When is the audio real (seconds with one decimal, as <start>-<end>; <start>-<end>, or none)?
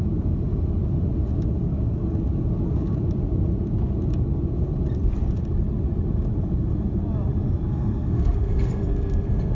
0.0-7.7